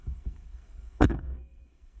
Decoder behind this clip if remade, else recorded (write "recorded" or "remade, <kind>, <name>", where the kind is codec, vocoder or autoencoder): remade, codec, SNAC